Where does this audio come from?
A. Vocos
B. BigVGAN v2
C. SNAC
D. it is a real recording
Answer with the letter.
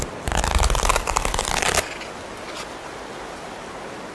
D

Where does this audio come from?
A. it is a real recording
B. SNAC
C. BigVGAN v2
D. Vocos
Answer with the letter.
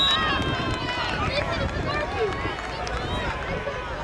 A